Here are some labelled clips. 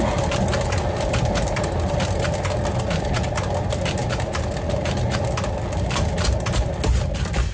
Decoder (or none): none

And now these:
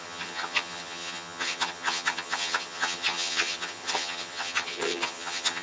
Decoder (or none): vocoder, HiFi-GAN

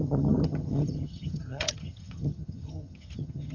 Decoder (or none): vocoder, HiFi-GAN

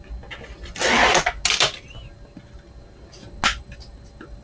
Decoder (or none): none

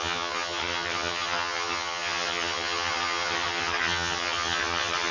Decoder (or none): vocoder, HiFi-GAN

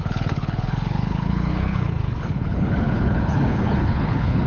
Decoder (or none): codec, HILCodec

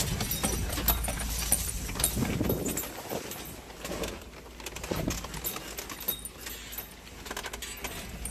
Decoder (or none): none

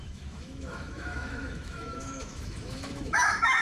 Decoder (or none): autoencoder, DAC-VAE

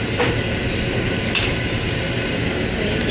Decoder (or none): none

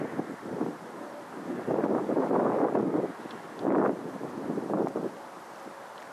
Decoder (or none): none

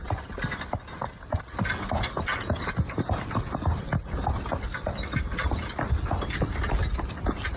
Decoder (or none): none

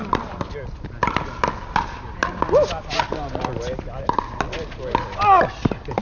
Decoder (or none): none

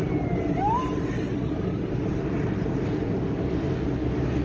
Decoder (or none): none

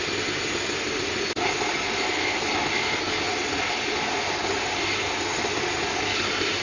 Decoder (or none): none